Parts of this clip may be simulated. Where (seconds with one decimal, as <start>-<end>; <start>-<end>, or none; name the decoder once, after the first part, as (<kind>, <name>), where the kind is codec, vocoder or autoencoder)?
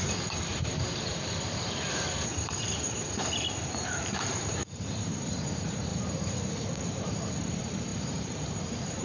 0.0-9.0 (vocoder, BigVGAN v2)